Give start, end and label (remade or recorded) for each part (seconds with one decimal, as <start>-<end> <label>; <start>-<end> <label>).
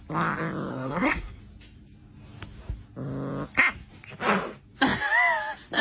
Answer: 0.0-0.7 recorded; 0.7-1.4 remade; 1.4-5.8 recorded